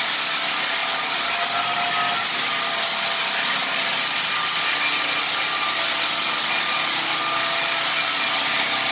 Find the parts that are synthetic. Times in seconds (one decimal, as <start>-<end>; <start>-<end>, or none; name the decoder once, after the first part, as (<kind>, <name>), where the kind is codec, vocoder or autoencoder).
none